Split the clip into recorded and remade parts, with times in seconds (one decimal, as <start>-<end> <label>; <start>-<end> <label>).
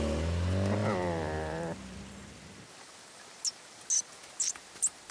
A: 0.0-5.1 recorded